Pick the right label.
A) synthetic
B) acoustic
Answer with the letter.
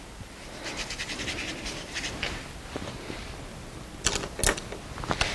B